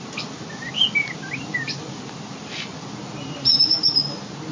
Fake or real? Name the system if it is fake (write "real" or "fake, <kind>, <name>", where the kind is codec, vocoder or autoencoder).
real